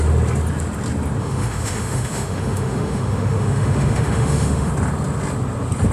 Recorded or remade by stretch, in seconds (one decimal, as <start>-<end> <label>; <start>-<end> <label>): 0.0-1.2 recorded; 1.2-4.7 remade; 4.7-5.9 recorded